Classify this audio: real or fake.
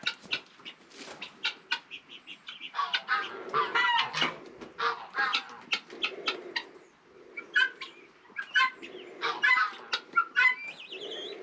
real